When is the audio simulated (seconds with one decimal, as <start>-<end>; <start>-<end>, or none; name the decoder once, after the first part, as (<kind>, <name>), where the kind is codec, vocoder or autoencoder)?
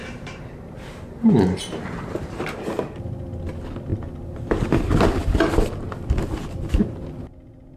0.0-2.5 (vocoder, BigVGAN v2)